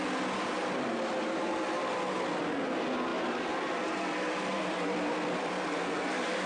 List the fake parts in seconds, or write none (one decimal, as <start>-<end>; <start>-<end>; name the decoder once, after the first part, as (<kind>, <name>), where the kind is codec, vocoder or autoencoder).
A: 3.1-5.5 (vocoder, BigVGAN v2)